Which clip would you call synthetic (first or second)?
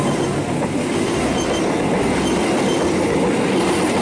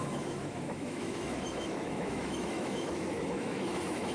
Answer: second